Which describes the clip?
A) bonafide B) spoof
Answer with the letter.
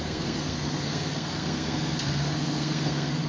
B